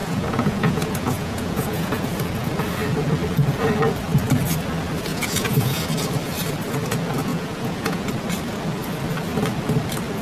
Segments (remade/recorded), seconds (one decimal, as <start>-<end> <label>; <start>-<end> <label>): 0.0-1.9 remade; 1.9-5.1 recorded; 5.1-5.8 remade; 5.8-7.3 recorded; 7.3-8.1 remade; 8.1-10.2 recorded